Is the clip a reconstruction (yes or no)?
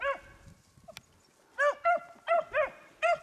no